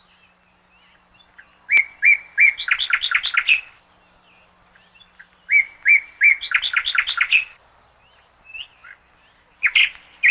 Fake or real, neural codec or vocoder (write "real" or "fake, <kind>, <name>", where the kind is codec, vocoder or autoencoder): real